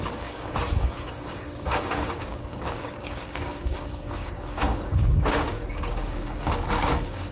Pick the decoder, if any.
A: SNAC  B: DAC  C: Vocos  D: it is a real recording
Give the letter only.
B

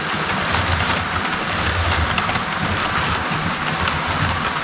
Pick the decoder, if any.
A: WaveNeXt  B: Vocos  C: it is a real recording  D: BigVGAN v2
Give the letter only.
C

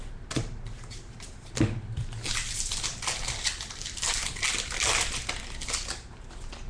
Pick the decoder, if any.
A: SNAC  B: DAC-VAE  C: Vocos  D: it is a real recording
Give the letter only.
D